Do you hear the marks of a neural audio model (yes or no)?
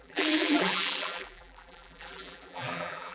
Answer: yes